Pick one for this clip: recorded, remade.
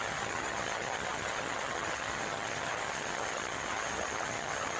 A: remade